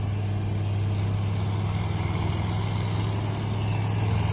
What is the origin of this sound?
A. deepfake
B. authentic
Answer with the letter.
B